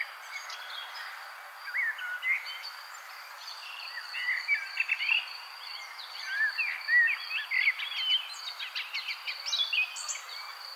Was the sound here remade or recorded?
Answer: recorded